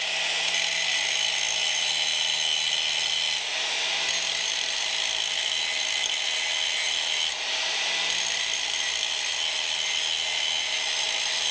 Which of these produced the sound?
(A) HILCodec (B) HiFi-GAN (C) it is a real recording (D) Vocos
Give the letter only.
C